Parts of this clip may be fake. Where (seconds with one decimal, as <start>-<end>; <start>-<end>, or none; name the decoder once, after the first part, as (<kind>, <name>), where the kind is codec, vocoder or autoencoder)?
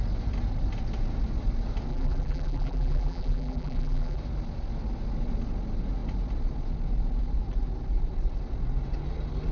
1.9-4.2 (vocoder, BigVGAN v2)